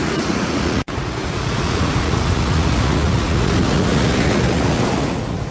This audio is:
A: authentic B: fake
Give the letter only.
B